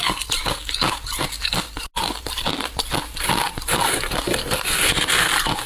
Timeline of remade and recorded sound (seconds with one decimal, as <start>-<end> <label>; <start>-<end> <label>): 0.0-5.7 recorded